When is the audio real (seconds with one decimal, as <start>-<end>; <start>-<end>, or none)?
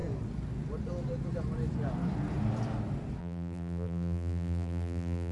0.0-3.2